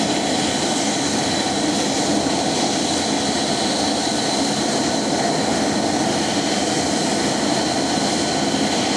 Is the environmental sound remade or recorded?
recorded